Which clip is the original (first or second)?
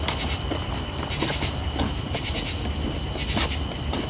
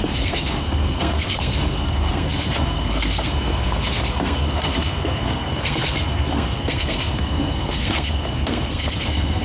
first